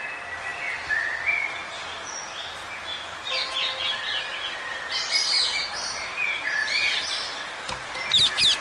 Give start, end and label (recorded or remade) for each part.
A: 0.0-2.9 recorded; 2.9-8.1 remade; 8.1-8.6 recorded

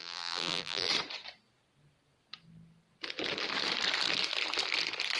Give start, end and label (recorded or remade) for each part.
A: 0.0-0.9 remade; 0.9-5.2 recorded

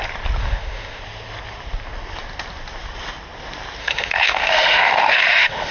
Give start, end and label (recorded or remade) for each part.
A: 0.0-0.4 recorded; 0.4-1.0 remade; 1.0-3.8 recorded; 3.8-5.7 remade

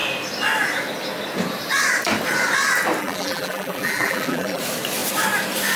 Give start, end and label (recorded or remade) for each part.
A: 0.0-3.0 recorded; 3.0-4.6 remade; 4.6-5.8 recorded

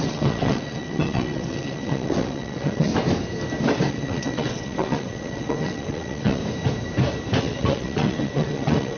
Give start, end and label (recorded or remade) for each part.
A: 0.0-2.9 remade; 2.9-3.9 recorded; 3.9-6.4 remade; 6.4-7.4 recorded; 7.4-9.0 remade